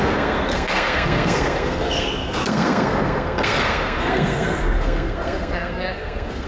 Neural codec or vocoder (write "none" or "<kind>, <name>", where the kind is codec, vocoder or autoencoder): codec, SNAC